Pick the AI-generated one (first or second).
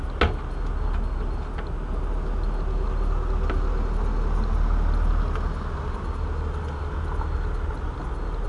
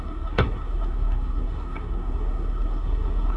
second